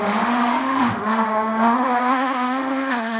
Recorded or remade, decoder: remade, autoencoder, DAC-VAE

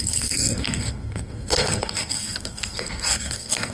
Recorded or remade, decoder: remade, codec, SNAC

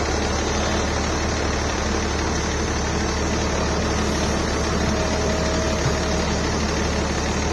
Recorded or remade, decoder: recorded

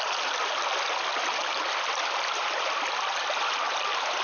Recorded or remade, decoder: recorded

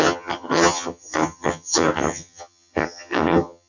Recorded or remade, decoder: remade, vocoder, HiFi-GAN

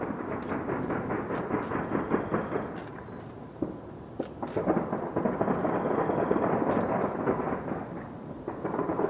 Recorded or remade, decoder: remade, vocoder, BigVGAN v2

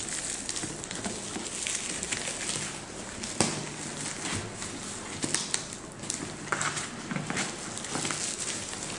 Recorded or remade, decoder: recorded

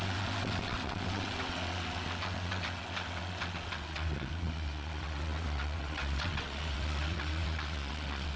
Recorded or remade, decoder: remade, vocoder, WaveNeXt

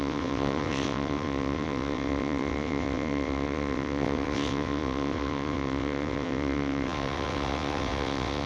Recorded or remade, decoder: remade, vocoder, WaveNeXt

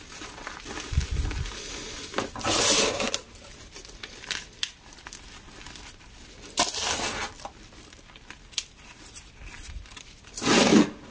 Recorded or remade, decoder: recorded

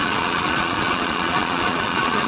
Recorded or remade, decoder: remade, vocoder, Vocos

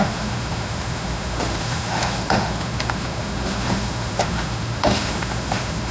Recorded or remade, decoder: remade, autoencoder, DAC-VAE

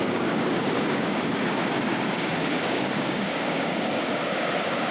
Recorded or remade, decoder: remade, codec, DAC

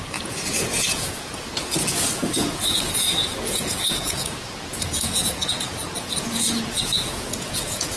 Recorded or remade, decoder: remade, vocoder, Vocos